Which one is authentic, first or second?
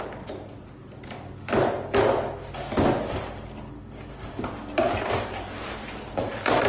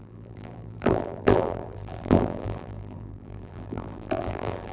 first